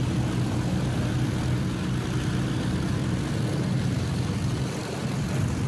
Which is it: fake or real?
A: real